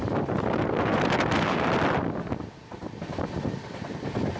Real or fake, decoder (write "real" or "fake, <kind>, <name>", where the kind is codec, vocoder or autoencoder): real